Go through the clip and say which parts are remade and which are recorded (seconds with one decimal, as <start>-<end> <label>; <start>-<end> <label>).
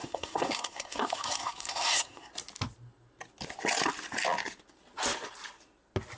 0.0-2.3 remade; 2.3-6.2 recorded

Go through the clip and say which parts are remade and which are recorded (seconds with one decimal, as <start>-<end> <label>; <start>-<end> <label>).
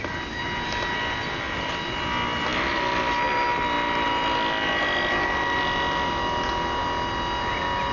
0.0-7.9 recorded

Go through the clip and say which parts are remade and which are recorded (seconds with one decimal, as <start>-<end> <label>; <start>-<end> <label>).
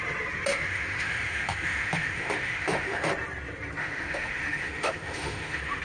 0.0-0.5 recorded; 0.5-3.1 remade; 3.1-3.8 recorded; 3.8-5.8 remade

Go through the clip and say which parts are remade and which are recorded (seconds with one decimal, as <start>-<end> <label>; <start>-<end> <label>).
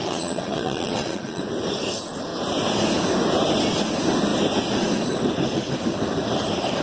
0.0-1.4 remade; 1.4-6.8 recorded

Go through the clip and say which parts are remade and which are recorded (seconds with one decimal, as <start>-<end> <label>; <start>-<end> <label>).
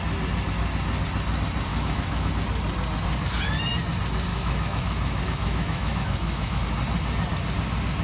0.0-1.7 recorded; 1.7-2.3 remade; 2.3-4.3 recorded; 4.3-6.6 remade; 6.6-8.0 recorded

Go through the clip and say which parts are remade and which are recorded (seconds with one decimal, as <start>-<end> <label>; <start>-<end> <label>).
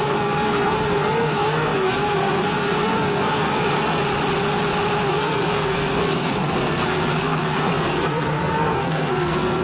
0.0-4.0 remade; 4.0-5.1 recorded; 5.1-9.6 remade